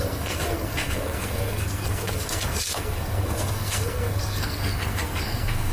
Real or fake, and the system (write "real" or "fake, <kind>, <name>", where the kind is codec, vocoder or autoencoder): fake, codec, SNAC